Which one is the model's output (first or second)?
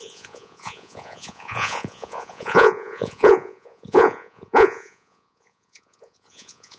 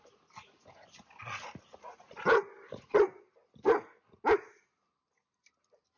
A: first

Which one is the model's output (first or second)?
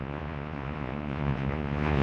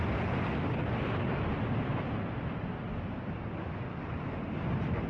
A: first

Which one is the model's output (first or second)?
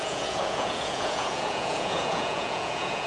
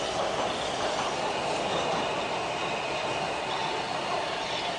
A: first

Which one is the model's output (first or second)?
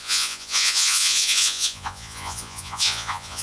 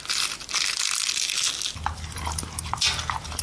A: first